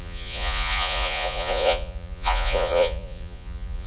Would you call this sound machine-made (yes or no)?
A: yes